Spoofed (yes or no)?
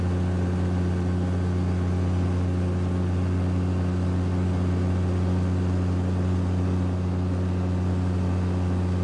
no